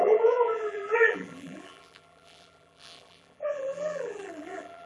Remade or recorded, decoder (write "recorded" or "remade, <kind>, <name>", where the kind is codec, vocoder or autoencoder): remade, vocoder, BigVGAN v2